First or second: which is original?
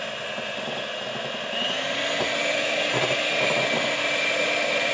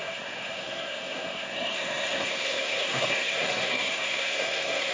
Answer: first